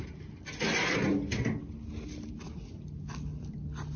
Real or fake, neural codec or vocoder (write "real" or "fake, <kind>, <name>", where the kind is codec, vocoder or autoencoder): real